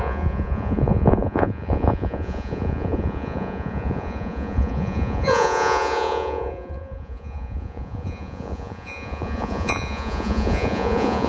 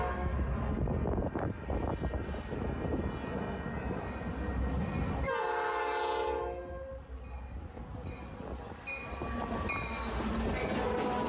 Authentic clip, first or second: second